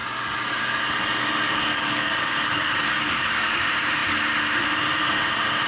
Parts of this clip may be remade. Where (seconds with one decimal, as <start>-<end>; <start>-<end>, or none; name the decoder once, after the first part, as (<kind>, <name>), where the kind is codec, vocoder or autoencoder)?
1.7-3.6 (codec, DAC)